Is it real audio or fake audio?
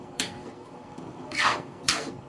fake